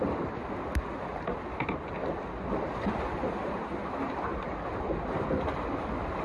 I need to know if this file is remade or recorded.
recorded